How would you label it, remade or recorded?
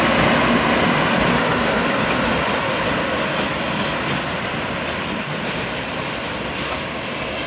recorded